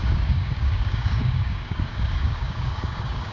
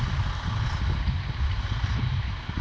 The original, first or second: second